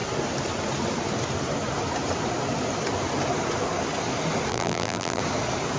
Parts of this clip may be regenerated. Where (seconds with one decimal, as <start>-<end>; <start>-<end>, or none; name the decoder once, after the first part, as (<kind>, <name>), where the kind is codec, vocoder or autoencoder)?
4.5-5.2 (vocoder, BigVGAN v2)